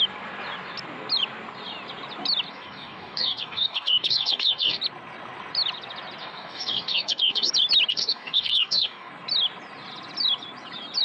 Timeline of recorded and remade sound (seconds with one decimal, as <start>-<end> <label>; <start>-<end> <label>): 0.0-2.5 recorded; 2.5-4.8 remade; 4.8-6.2 recorded; 6.2-7.5 remade; 7.5-7.9 recorded; 7.9-9.1 remade; 9.1-11.0 recorded

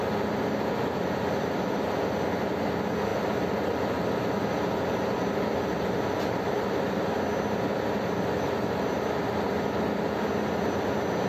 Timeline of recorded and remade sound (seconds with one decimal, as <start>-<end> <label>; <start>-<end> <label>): 0.0-11.3 recorded

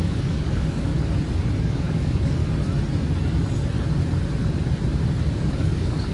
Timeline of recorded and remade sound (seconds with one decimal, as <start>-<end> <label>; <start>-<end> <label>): 0.0-0.9 remade; 0.9-1.6 recorded; 1.6-2.4 remade; 2.4-5.3 recorded; 5.3-6.1 remade

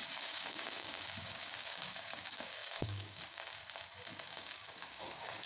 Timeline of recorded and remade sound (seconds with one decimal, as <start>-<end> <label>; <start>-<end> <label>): 0.0-3.6 remade; 3.6-4.3 recorded; 4.3-5.5 remade

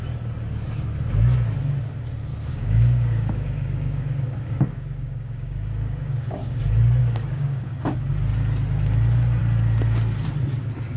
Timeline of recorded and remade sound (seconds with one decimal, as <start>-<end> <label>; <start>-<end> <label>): 0.0-2.3 recorded; 2.3-6.6 remade; 6.6-7.0 recorded; 7.0-7.9 remade; 7.9-11.0 recorded

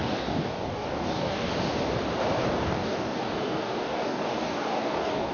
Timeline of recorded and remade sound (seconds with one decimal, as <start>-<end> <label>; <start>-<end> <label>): 0.0-1.5 remade; 1.5-2.4 recorded; 2.4-5.3 remade

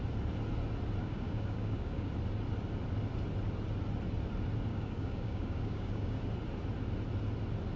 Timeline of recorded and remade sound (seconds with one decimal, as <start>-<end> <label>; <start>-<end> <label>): 0.0-1.0 recorded; 1.0-2.1 remade; 2.1-4.7 recorded; 4.7-6.2 remade; 6.2-7.8 recorded

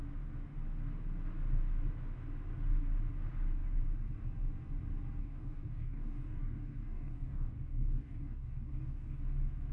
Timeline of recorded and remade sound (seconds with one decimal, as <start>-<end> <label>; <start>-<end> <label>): 0.0-5.2 recorded; 5.2-9.2 remade; 9.2-9.7 recorded